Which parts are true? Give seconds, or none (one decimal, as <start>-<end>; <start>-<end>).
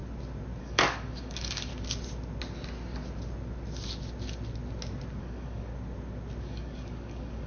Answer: 0.0-0.6; 1.7-5.2; 5.7-6.4